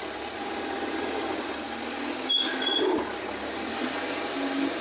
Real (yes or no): yes